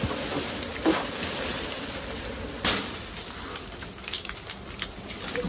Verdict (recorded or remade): recorded